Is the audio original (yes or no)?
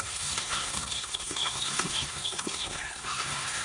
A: no